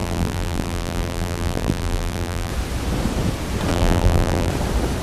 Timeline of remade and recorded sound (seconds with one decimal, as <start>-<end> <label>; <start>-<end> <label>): 0.0-2.5 remade; 2.5-3.7 recorded; 3.7-4.5 remade; 4.5-5.0 recorded

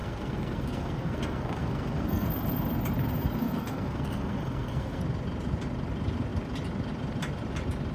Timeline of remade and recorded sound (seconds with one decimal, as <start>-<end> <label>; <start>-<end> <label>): 0.0-2.3 remade; 2.3-3.4 recorded; 3.4-5.0 remade; 5.0-7.9 recorded

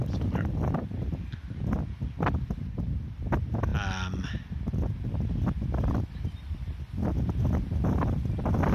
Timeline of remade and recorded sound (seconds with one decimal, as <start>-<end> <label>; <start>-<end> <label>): 0.0-8.7 recorded

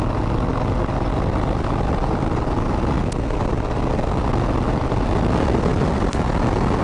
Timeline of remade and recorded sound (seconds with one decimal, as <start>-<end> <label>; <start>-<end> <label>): 0.0-6.8 recorded

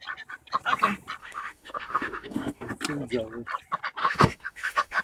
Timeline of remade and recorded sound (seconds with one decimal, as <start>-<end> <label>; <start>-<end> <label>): 0.0-1.2 recorded; 1.2-2.7 remade; 2.7-4.0 recorded; 4.0-5.0 remade

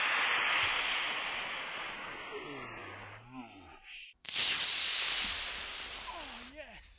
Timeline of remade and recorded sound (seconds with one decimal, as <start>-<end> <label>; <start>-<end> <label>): 0.0-7.0 recorded